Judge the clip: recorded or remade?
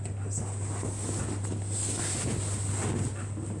recorded